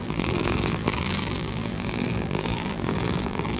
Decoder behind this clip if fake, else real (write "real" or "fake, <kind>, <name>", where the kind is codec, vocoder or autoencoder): fake, vocoder, BigVGAN v2